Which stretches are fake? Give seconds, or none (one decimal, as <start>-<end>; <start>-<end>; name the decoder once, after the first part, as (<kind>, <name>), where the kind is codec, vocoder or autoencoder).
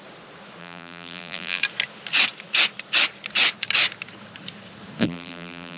0.6-1.6 (vocoder, BigVGAN v2); 5.0-5.8